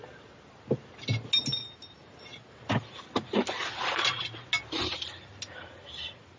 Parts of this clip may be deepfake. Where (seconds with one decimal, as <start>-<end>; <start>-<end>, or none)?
none